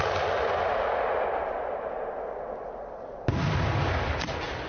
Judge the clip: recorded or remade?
recorded